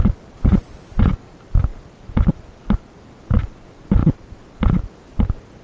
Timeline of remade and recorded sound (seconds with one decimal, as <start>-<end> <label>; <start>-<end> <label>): 0.0-5.6 recorded